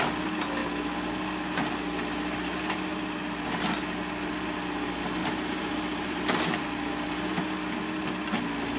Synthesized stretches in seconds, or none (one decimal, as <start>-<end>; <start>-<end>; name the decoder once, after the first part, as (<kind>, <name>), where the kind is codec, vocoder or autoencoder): 5.2-6.2 (vocoder, BigVGAN v2)

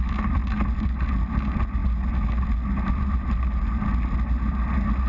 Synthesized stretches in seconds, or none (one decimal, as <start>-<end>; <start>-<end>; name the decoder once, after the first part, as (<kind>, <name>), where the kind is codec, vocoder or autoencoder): none

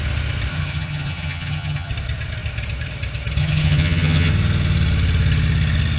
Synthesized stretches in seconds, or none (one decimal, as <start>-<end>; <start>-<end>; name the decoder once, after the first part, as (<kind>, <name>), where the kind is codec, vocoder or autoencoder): 0.5-1.9 (vocoder, HiFi-GAN); 3.4-4.3